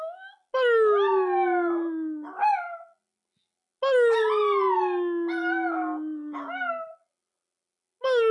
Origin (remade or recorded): recorded